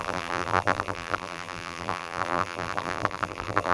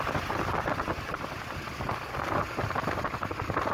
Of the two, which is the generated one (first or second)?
first